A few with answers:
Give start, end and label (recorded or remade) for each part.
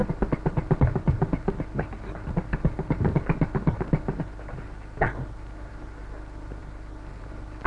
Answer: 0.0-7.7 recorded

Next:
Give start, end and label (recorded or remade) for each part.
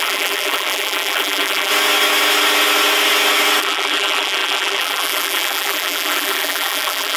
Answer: 0.0-1.7 remade; 1.7-3.6 recorded; 3.6-7.2 remade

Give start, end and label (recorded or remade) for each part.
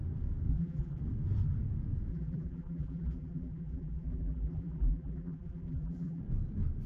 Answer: 0.0-0.5 recorded; 0.5-1.0 remade; 1.0-2.1 recorded; 2.1-6.2 remade; 6.2-6.9 recorded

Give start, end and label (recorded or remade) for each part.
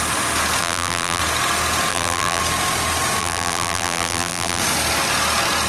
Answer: 0.0-0.6 recorded; 0.6-1.2 remade; 1.2-1.9 recorded; 1.9-2.4 remade; 2.4-3.2 recorded; 3.2-4.6 remade; 4.6-5.7 recorded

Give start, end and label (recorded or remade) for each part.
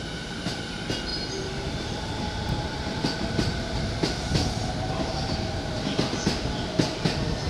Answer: 0.0-1.1 recorded; 1.1-2.8 remade; 2.8-7.5 recorded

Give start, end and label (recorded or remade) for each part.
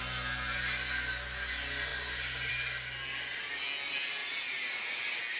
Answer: 0.0-1.9 recorded; 1.9-2.5 remade; 2.5-4.2 recorded; 4.2-4.9 remade; 4.9-5.4 recorded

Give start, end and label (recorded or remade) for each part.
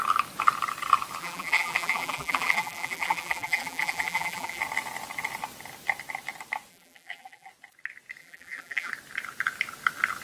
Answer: 0.0-1.2 recorded; 1.2-4.6 remade; 4.6-6.7 recorded; 6.7-7.5 remade; 7.5-8.2 recorded; 8.2-8.9 remade; 8.9-10.2 recorded